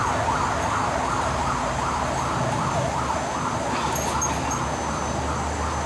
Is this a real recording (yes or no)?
yes